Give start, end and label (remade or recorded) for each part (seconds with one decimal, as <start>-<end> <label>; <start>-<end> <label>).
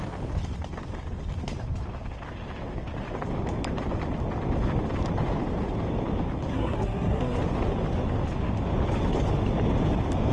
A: 0.0-6.5 recorded; 6.5-7.4 remade; 7.4-10.3 recorded